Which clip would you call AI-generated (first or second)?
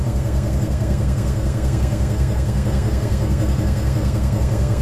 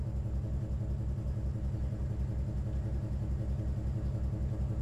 first